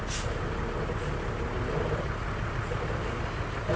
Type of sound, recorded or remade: recorded